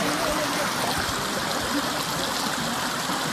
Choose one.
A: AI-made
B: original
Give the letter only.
B